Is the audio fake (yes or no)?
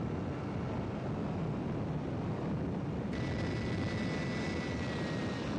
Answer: no